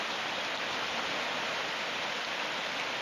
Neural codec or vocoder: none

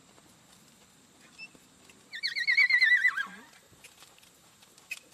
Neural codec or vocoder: none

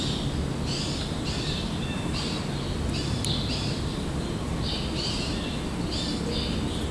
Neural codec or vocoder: none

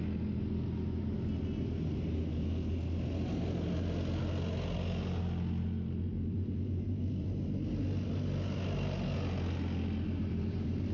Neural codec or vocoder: none